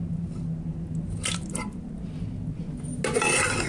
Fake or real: real